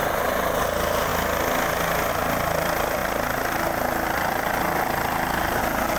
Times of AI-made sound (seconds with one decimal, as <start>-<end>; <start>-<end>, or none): 0.6-1.1; 2.1-6.0